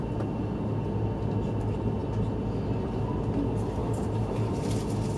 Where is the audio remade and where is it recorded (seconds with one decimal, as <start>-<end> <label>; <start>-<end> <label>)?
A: 0.0-3.8 recorded; 3.8-4.7 remade; 4.7-5.2 recorded